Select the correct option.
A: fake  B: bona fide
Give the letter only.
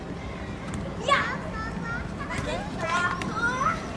B